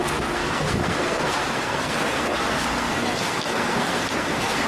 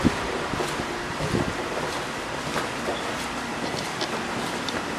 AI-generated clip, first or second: first